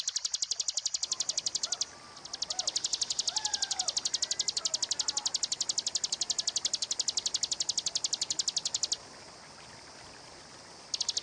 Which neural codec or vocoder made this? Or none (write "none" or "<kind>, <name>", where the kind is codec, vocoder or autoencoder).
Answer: none